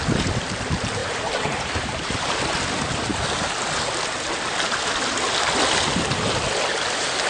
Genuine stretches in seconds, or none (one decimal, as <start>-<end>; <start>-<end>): 0.0-1.0; 2.1-7.3